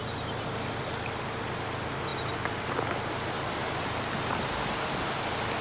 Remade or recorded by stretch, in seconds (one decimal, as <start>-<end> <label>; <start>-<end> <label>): 0.0-5.6 recorded